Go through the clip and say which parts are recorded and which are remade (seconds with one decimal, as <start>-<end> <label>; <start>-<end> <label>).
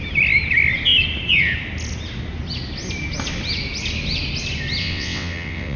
0.0-4.8 recorded; 4.8-5.8 remade